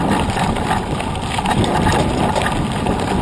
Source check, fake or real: fake